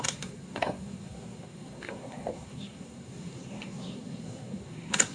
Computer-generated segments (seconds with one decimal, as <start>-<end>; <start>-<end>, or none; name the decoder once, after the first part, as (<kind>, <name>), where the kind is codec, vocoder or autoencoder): 0.0-5.1 (codec, SNAC)